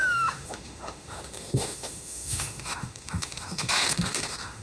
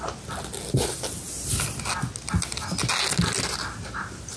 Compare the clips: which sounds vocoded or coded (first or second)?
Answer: first